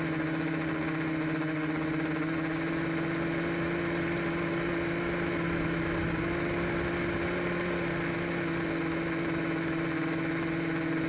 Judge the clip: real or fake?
real